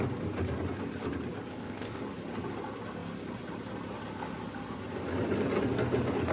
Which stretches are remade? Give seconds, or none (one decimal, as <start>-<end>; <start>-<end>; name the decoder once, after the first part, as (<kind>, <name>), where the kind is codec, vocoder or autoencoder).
1.5-2.0 (codec, ZipCodec)